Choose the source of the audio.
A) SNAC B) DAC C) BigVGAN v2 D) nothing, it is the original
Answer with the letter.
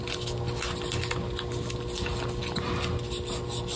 D